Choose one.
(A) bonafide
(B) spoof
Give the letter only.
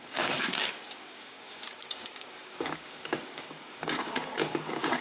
B